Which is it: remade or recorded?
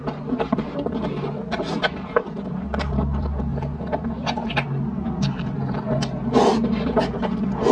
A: recorded